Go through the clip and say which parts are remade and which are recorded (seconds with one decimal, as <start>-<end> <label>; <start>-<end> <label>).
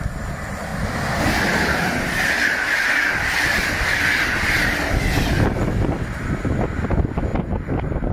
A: 0.0-7.3 recorded; 7.3-8.1 remade